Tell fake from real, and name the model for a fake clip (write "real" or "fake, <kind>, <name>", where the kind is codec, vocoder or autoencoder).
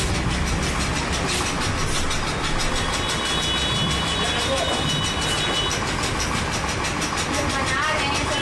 real